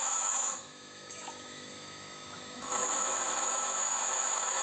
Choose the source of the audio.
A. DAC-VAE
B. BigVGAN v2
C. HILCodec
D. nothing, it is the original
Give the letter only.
A